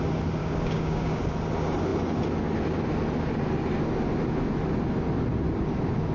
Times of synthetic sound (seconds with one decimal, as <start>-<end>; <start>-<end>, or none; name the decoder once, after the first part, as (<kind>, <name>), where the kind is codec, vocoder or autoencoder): 0.4-1.2 (codec, DAC)